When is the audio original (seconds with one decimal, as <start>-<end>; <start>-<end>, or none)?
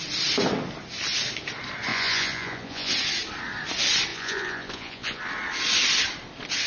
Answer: 0.0-1.9; 2.9-4.1; 5.2-6.7